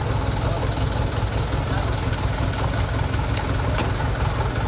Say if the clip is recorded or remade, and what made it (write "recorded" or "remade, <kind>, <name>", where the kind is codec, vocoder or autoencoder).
recorded